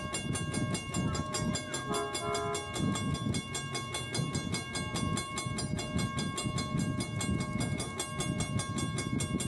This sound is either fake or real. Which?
real